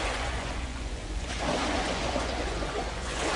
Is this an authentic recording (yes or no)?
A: no